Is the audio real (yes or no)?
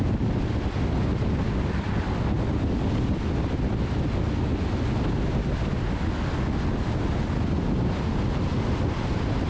yes